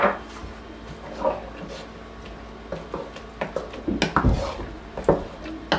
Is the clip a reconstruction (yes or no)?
no